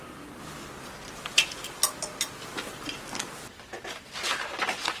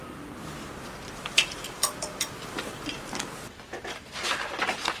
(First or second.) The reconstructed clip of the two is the second